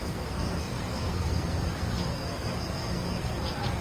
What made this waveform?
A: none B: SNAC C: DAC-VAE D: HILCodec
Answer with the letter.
B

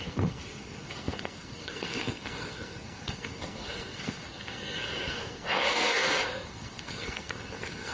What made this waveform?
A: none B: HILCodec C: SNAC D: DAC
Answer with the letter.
C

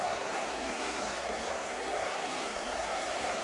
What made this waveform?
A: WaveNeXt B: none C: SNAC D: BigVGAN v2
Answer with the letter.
C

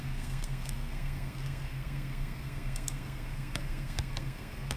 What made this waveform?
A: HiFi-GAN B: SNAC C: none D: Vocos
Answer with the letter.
B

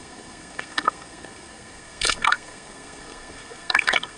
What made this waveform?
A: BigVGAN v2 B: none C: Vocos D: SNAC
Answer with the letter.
D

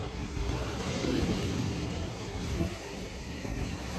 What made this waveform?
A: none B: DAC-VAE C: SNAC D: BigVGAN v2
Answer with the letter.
C